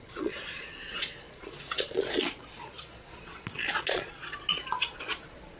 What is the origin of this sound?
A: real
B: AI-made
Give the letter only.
B